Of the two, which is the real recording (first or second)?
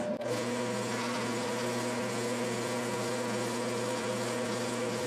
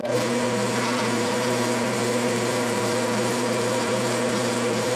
first